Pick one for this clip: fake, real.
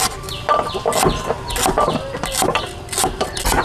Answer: real